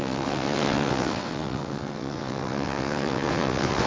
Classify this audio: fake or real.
fake